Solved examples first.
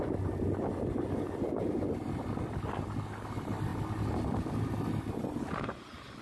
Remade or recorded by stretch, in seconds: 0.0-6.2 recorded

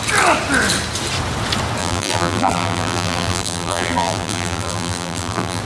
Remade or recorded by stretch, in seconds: 0.0-1.8 recorded; 1.8-5.6 remade